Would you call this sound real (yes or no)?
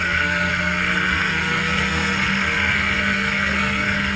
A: no